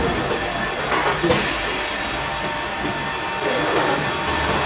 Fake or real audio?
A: real